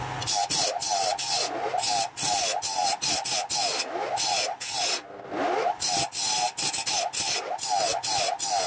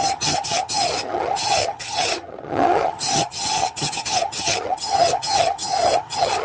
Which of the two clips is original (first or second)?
first